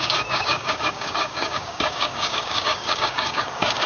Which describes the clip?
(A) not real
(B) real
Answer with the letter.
A